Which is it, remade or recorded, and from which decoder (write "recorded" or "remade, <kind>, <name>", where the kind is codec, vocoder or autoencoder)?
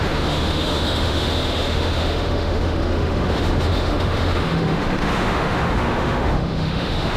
remade, autoencoder, DAC-VAE